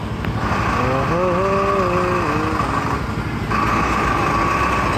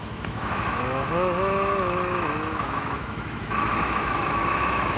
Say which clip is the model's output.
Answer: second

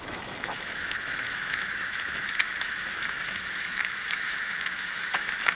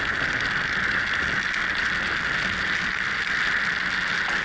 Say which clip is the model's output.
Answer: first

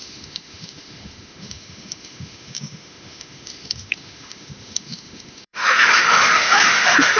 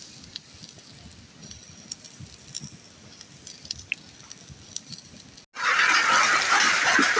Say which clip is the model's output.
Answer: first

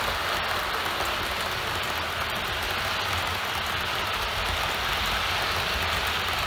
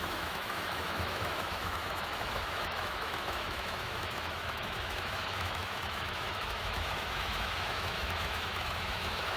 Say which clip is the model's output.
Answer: second